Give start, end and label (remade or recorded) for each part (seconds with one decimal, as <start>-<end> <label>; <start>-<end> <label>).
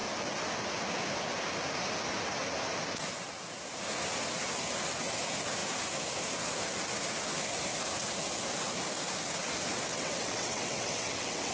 0.0-9.9 recorded; 9.9-11.5 remade